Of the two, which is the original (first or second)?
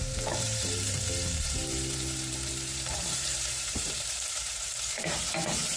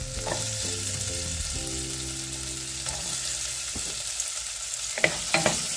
second